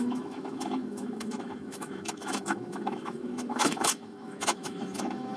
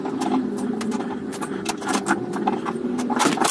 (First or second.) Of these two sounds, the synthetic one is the first